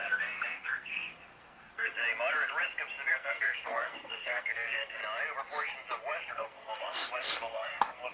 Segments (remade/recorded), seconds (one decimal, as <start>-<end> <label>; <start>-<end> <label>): 0.0-2.0 remade; 2.0-3.1 recorded; 3.1-5.0 remade; 5.0-6.3 recorded; 6.3-8.1 remade